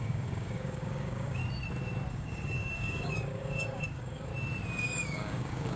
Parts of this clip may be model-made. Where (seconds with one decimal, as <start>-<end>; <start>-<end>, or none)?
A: 0.0-1.4; 2.1-4.3; 4.8-5.8